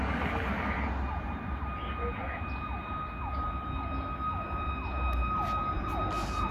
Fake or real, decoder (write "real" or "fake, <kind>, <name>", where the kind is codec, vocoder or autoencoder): real